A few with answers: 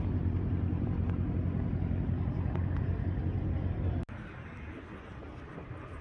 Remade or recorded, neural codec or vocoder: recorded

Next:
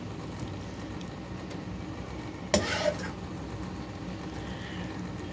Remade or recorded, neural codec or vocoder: recorded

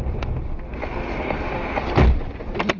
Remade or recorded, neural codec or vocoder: recorded